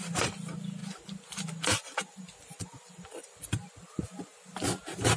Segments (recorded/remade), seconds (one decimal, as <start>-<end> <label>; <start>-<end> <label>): 0.0-5.2 recorded